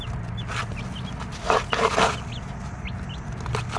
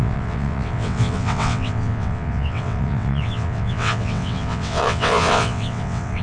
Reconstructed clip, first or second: second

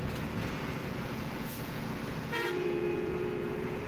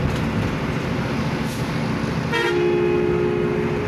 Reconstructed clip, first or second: first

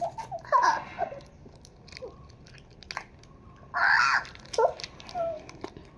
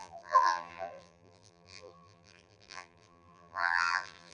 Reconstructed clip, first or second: second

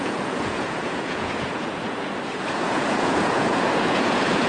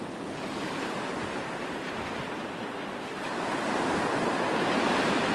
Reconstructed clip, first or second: first